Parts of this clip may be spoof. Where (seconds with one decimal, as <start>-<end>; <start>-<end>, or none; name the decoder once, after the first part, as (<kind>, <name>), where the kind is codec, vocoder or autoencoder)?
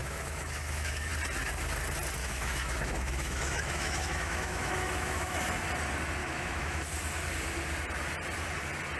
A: 0.0-1.1 (autoencoder, DAC-VAE); 2.2-5.5; 6.2-6.8